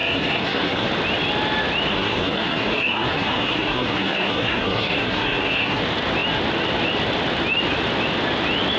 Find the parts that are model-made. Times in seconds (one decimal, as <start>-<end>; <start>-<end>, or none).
0.0-0.9; 1.9-5.8